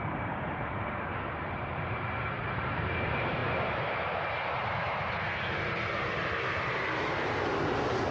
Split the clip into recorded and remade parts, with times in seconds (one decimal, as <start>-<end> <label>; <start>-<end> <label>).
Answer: 0.0-3.4 remade; 3.4-3.9 recorded; 3.9-8.1 remade